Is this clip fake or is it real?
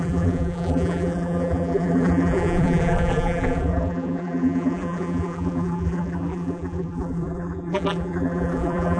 fake